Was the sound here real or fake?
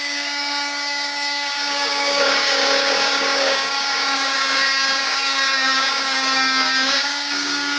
fake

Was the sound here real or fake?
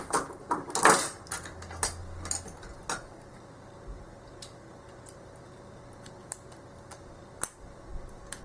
real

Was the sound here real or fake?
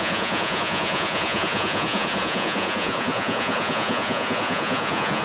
fake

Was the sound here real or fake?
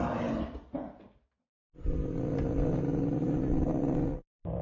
real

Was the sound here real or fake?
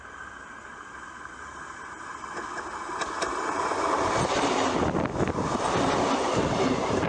real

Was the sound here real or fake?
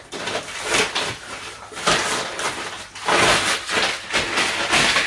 real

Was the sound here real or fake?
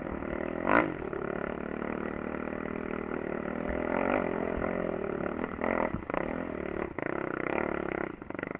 real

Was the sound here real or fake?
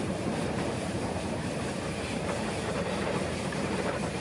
fake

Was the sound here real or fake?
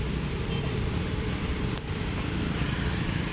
fake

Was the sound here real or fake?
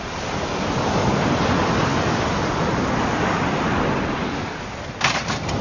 real